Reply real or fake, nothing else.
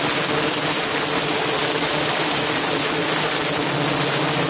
real